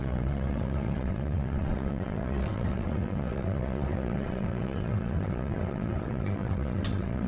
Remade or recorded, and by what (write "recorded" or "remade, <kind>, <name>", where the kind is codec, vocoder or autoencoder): remade, vocoder, WaveNeXt